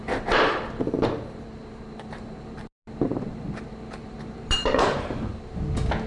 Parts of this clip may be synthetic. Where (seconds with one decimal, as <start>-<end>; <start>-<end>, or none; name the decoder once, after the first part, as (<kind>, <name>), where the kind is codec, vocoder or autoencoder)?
0.0-2.6 (vocoder, BigVGAN v2); 4.0-5.4